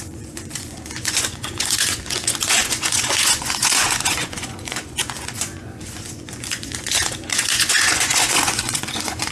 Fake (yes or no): yes